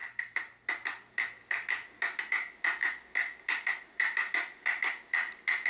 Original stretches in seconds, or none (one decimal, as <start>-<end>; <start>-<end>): 0.0-5.7